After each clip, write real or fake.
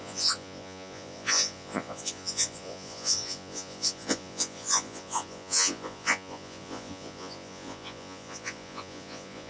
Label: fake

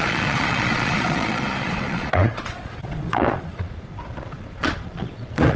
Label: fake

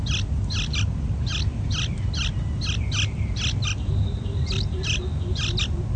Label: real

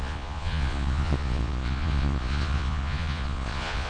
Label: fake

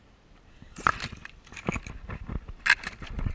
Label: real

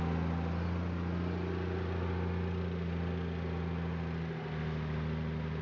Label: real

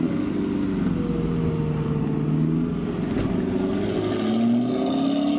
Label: real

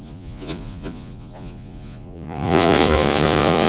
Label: fake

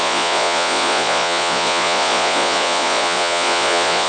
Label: fake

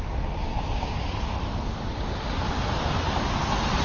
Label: real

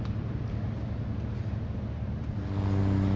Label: real